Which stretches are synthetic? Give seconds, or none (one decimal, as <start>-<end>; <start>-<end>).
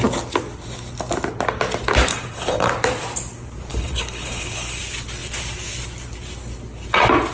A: 2.1-2.7; 3.7-4.8